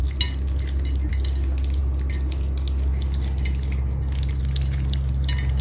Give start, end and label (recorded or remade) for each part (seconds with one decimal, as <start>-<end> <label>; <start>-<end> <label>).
0.0-5.6 recorded